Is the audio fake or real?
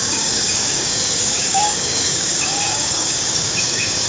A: fake